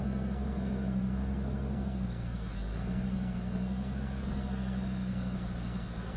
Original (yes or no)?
no